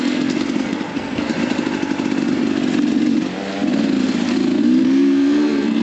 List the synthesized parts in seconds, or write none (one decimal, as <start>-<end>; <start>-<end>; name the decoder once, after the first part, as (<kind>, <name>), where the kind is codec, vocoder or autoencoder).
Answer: 0.0-1.3 (codec, SNAC); 4.8-5.8